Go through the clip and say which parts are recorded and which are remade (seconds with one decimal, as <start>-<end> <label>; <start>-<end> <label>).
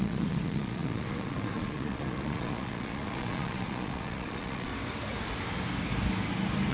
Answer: 0.0-4.7 remade; 4.7-6.7 recorded